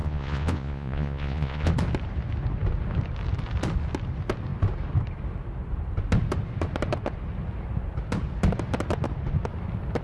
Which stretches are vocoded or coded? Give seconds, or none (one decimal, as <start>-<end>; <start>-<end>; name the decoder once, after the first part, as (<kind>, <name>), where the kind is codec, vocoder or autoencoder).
0.0-1.7 (vocoder, Vocos)